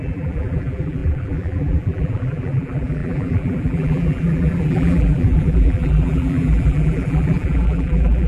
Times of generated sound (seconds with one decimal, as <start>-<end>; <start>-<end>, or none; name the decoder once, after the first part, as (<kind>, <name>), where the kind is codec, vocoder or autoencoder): 0.0-8.3 (vocoder, BigVGAN v2)